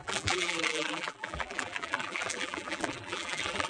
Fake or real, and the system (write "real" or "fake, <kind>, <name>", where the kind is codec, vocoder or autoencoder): fake, vocoder, BigVGAN v2